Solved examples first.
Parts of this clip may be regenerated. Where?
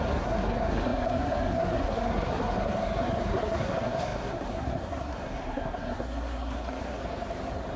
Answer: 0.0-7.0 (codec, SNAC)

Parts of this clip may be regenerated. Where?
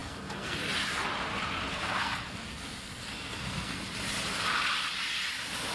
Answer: 0.0-0.6 (codec, SNAC); 1.7-3.8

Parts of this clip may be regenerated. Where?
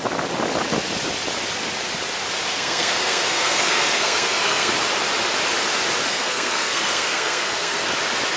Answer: 2.5-4.7 (codec, SNAC); 6.1-7.9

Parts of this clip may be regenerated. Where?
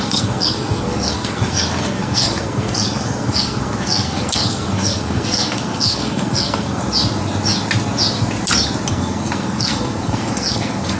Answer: 0.0-6.8 (codec, SNAC); 8.9-11.0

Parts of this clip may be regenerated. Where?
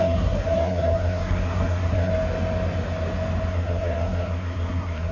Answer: 0.0-2.1 (codec, SNAC); 3.5-5.1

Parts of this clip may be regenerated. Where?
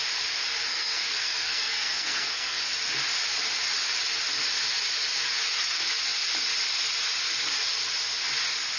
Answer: 0.7-2.6 (codec, SNAC)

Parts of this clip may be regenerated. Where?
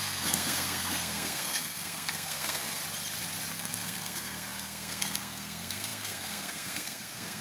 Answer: 0.0-2.8 (codec, SNAC); 3.5-7.4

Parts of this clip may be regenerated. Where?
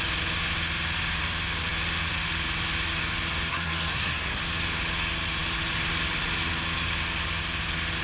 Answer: 3.5-4.4 (codec, SNAC)